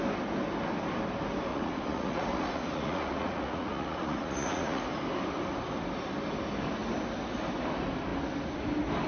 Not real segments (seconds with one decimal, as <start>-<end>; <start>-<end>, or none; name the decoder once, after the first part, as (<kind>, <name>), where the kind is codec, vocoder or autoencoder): 1.5-4.8 (vocoder, Vocos)